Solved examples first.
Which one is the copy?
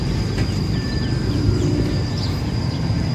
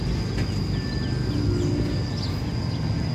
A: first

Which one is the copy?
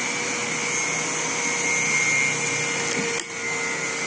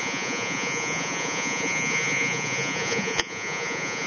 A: second